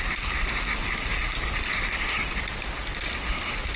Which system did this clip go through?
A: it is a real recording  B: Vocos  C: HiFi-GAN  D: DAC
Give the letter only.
A